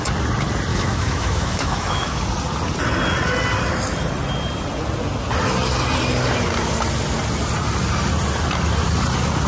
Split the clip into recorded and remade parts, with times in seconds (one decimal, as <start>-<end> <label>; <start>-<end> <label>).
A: 0.0-0.7 recorded; 0.7-2.2 remade; 2.2-9.5 recorded